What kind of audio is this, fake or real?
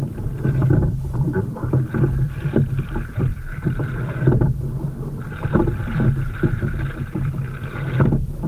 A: fake